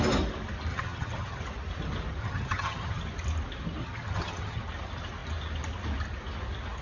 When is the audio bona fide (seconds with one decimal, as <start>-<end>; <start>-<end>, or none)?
0.0-0.7; 1.4-2.2; 3.0-3.8; 4.6-6.8